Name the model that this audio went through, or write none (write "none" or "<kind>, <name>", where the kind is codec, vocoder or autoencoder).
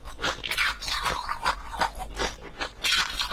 none